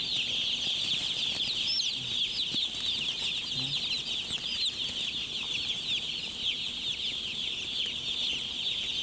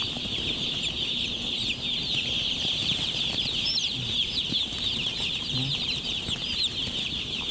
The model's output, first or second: second